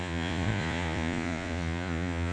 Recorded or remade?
remade